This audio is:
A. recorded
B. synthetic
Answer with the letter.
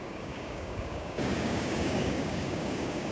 B